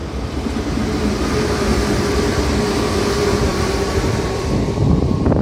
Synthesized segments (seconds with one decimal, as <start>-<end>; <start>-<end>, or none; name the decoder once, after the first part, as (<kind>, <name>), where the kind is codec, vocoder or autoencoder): 3.5-5.4 (vocoder, BigVGAN v2)